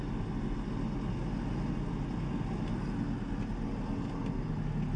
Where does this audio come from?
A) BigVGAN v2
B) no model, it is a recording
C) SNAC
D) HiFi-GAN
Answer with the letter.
B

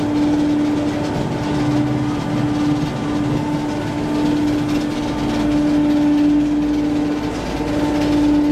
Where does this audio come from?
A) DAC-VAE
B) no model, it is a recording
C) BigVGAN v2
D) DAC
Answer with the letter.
B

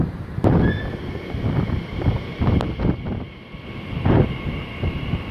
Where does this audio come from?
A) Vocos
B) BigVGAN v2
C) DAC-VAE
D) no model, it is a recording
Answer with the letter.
D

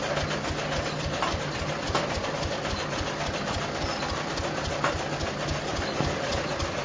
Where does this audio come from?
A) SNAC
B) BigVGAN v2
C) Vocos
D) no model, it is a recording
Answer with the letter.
D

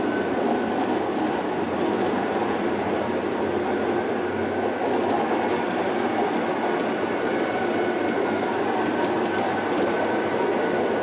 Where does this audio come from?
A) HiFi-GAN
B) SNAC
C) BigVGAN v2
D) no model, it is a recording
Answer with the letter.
D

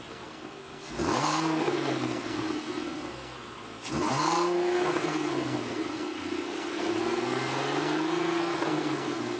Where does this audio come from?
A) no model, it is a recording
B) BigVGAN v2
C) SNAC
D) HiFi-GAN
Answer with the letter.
C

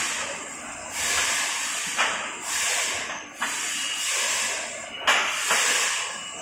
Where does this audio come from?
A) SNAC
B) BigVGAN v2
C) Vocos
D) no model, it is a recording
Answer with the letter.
D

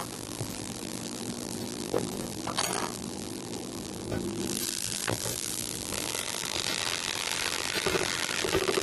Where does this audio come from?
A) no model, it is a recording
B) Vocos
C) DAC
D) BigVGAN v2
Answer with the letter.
D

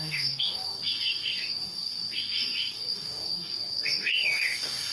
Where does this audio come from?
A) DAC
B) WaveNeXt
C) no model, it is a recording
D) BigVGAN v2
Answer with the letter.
A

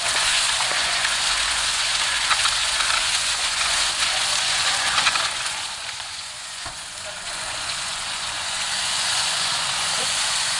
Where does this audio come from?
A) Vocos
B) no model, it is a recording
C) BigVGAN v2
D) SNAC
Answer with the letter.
A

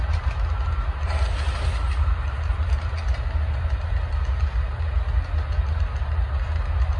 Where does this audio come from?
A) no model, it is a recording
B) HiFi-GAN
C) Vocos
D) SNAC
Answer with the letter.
A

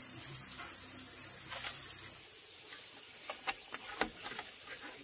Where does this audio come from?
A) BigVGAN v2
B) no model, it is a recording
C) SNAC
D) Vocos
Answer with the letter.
B